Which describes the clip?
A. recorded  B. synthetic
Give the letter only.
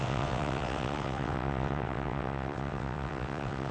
B